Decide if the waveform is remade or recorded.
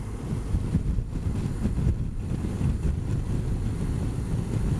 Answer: recorded